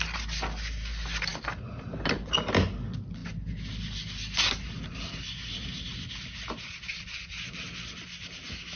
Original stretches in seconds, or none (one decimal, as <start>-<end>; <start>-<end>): 0.0-8.8

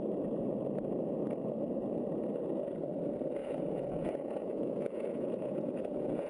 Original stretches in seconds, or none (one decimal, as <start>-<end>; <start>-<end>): 0.0-3.4